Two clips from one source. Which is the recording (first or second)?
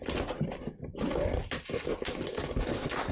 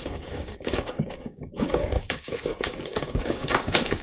first